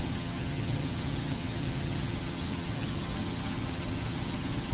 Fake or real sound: fake